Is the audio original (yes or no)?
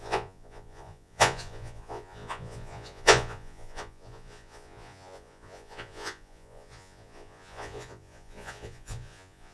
no